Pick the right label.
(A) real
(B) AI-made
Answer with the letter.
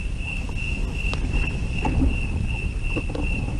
A